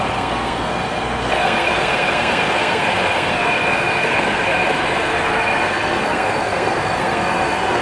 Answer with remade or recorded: remade